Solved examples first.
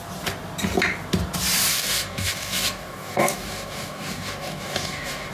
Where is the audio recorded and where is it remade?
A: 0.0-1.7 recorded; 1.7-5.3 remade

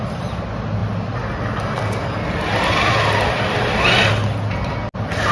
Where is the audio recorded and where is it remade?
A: 0.0-5.3 recorded

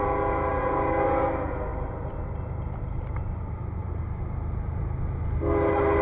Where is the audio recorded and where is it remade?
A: 0.0-6.0 recorded

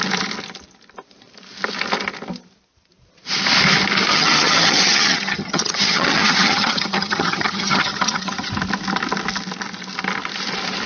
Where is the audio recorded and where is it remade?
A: 0.0-4.1 recorded; 4.1-8.5 remade; 8.5-10.9 recorded

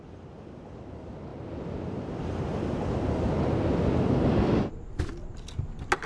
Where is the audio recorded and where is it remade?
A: 0.0-6.1 recorded

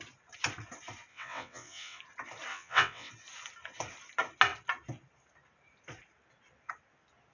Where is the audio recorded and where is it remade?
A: 0.0-1.1 recorded; 1.1-2.0 remade; 2.0-2.5 recorded; 2.5-3.1 remade; 3.1-7.3 recorded